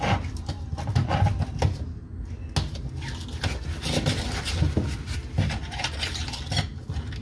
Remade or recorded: recorded